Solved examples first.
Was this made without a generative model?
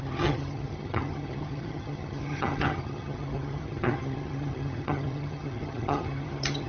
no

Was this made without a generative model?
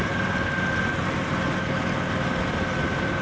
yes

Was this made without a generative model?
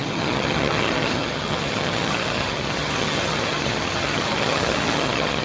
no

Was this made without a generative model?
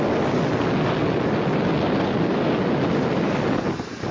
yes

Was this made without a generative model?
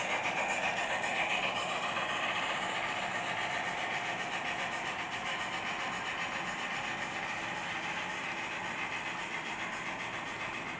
yes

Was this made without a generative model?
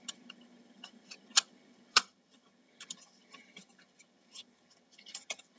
no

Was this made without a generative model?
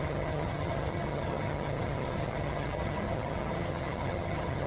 no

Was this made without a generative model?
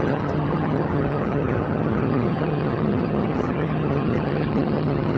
no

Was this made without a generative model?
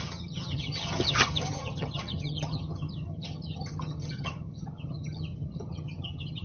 no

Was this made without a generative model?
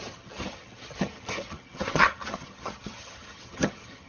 no